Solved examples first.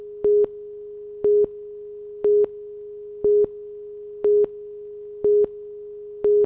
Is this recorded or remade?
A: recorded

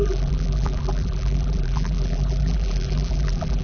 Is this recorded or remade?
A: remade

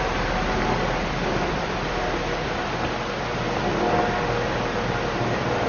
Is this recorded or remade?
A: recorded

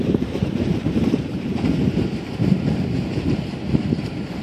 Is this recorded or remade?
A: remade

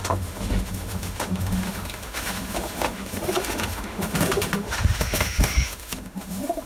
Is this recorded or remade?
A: remade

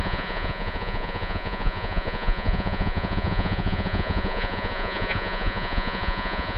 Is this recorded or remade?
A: remade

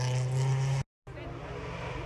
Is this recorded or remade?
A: recorded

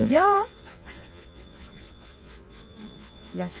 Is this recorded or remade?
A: remade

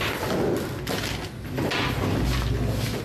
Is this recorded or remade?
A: recorded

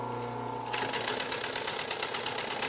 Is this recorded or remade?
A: recorded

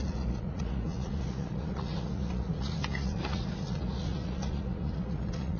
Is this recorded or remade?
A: remade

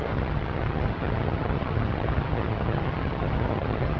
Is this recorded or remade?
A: remade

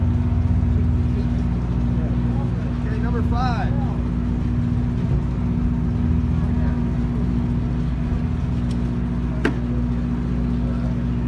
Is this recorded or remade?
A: recorded